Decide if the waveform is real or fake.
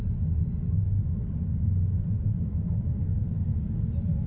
real